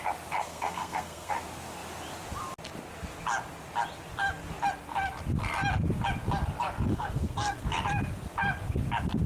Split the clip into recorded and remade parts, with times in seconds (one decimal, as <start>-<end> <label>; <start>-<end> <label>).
0.0-0.4 recorded; 0.4-1.3 remade; 1.3-6.9 recorded; 6.9-7.7 remade; 7.7-9.3 recorded